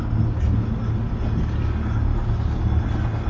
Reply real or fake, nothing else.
real